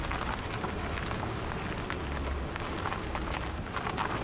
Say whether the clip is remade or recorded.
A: recorded